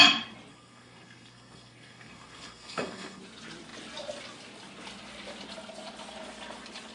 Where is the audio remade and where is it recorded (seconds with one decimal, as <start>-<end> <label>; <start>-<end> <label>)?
0.0-0.5 recorded; 0.5-3.2 remade; 3.2-6.9 recorded